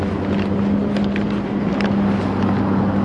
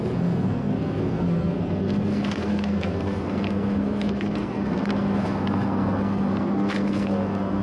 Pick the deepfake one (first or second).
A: second